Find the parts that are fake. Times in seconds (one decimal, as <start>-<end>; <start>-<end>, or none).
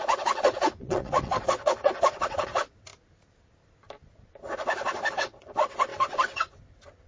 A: 0.0-2.9; 5.1-7.1